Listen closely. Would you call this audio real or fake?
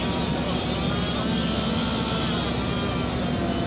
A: real